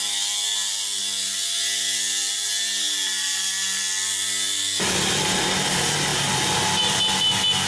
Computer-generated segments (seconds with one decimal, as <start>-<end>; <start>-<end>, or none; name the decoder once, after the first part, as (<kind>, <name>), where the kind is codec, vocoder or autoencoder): none